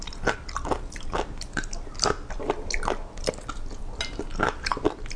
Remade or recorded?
recorded